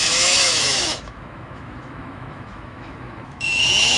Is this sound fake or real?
fake